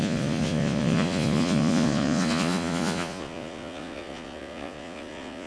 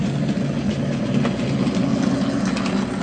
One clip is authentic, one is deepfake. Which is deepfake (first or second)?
first